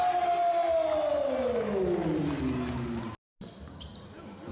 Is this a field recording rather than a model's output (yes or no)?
yes